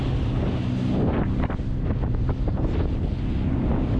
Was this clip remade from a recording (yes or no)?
no